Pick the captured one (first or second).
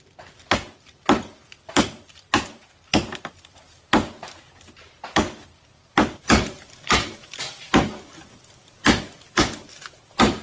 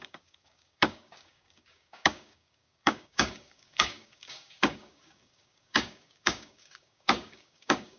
first